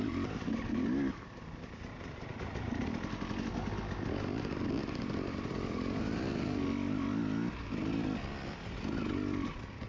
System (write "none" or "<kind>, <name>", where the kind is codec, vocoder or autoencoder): none